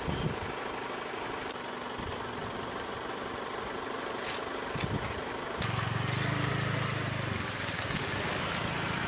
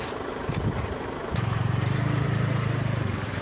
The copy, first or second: second